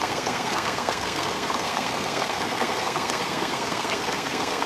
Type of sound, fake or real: fake